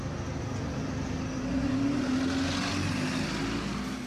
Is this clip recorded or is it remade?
recorded